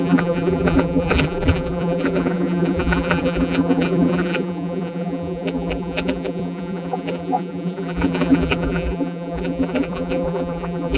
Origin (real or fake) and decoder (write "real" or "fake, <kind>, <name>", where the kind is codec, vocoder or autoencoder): fake, vocoder, BigVGAN v2